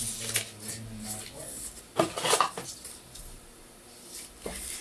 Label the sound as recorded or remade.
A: recorded